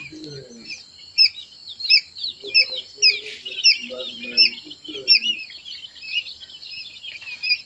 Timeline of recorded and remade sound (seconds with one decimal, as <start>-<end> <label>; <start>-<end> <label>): 0.0-7.7 recorded